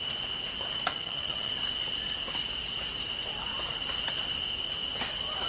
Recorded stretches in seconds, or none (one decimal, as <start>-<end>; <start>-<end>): 0.0-0.9; 1.5-5.5